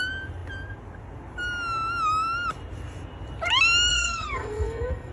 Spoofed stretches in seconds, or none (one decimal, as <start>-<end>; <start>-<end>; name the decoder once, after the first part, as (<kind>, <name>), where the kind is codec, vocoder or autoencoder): 3.9-5.1 (codec, SNAC)